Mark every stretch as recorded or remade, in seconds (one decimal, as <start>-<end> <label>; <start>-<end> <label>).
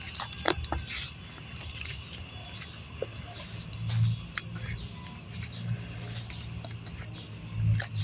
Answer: 0.0-8.0 recorded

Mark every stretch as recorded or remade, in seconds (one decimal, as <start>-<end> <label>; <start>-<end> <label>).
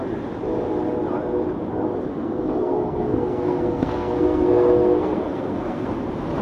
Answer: 0.0-2.1 recorded; 2.1-5.9 remade; 5.9-6.4 recorded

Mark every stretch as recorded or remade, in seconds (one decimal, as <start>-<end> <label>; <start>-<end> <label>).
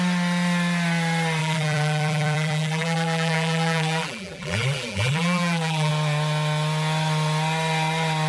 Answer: 0.0-1.4 recorded; 1.4-5.9 remade; 5.9-8.3 recorded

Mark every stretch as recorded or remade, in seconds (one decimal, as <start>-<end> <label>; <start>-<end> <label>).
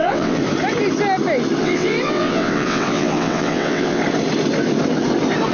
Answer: 0.0-0.4 remade; 0.4-1.6 recorded; 1.6-4.0 remade; 4.0-5.5 recorded